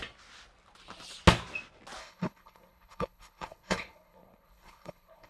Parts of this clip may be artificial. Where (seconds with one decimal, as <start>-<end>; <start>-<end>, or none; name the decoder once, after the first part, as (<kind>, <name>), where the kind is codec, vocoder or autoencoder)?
2.0-5.3 (codec, HILCodec)